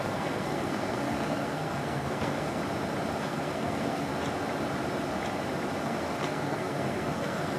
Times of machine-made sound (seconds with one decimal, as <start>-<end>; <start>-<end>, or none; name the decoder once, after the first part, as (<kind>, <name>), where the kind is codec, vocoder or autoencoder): 0.0-2.6 (codec, SNAC); 3.2-4.1; 5.8-7.6